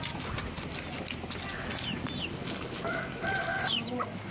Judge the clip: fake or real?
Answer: real